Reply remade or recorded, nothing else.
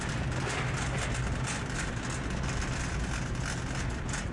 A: recorded